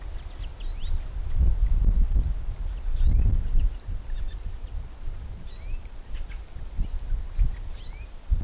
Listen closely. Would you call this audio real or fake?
real